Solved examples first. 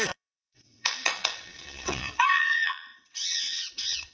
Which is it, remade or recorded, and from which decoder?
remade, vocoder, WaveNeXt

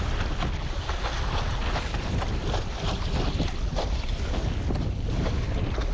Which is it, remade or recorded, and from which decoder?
recorded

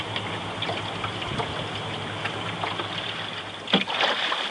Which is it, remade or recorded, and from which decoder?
recorded